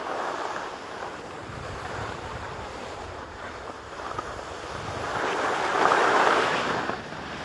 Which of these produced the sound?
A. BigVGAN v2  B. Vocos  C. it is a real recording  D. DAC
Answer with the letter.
A